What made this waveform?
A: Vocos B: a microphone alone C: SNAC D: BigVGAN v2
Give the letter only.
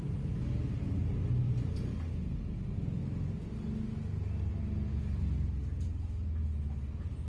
B